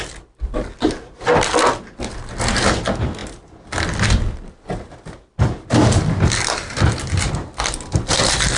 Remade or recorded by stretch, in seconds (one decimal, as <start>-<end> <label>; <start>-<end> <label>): 0.0-8.6 recorded